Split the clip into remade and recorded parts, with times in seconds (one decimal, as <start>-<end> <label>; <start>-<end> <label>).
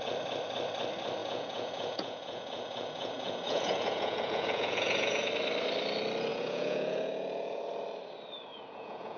0.0-1.2 recorded; 1.2-5.3 remade; 5.3-6.3 recorded; 6.3-7.6 remade; 7.6-8.5 recorded; 8.5-9.2 remade